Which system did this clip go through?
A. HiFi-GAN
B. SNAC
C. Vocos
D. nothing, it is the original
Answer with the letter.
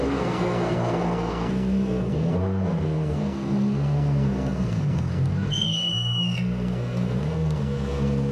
B